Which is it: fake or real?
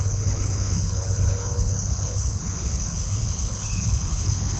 fake